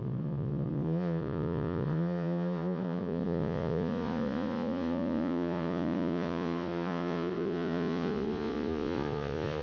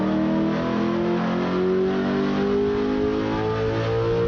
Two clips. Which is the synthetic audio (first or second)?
first